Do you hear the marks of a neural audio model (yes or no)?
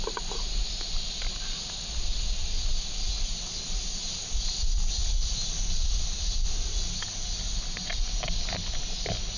no